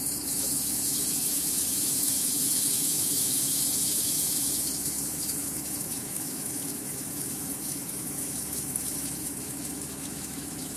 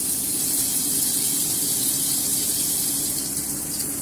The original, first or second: second